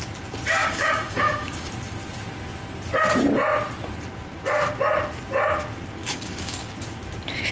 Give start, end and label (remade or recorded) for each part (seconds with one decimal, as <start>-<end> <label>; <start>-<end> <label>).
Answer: 0.0-0.6 recorded; 0.6-1.7 remade; 1.7-6.0 recorded; 6.0-6.8 remade; 6.8-7.5 recorded